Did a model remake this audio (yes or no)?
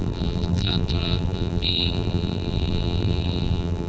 yes